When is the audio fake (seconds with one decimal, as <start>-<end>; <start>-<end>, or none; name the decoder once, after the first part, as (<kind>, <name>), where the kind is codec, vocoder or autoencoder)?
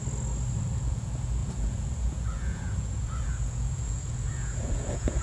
0.7-5.2 (vocoder, Vocos)